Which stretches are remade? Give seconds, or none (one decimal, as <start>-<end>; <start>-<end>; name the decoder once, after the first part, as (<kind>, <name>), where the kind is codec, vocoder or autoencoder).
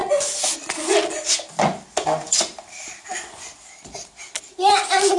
none